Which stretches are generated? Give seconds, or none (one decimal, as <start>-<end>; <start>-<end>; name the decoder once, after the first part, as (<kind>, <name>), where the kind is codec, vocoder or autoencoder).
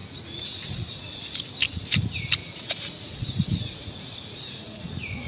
0.0-1.4 (vocoder, Vocos); 2.4-5.3